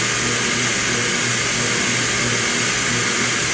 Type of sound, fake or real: real